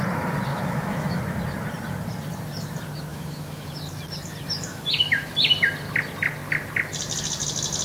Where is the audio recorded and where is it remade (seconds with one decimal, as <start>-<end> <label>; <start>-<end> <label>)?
0.0-0.5 recorded; 0.5-1.2 remade; 1.2-3.1 recorded; 3.1-3.7 remade; 3.7-4.7 recorded; 4.7-5.3 remade; 5.3-7.8 recorded